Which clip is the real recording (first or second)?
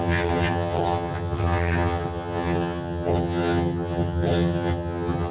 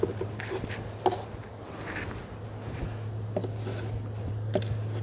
second